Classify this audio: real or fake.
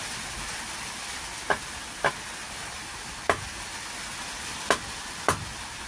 real